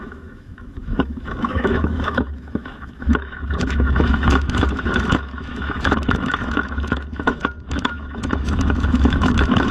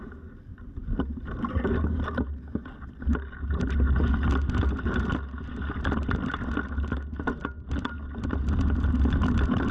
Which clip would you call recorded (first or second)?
second